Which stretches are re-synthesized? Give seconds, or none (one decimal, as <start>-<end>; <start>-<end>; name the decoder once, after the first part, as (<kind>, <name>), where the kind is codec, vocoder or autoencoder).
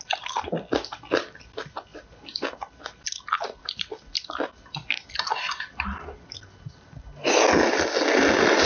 none